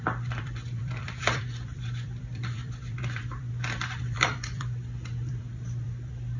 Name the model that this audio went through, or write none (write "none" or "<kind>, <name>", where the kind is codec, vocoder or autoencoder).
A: vocoder, BigVGAN v2